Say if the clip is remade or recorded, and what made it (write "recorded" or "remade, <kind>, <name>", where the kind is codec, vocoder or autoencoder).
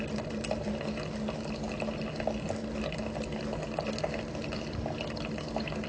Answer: recorded